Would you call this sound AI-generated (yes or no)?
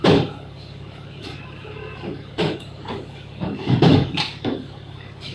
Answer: yes